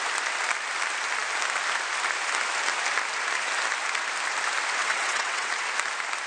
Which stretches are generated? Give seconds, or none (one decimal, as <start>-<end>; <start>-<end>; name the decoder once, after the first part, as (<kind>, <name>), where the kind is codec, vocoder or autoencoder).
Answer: 4.8-5.5 (vocoder, WaveNeXt)